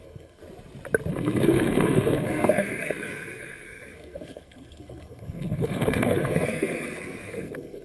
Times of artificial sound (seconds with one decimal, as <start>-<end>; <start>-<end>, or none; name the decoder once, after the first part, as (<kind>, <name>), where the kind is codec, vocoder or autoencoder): 0.0-0.4 (codec, SNAC); 1.1-7.8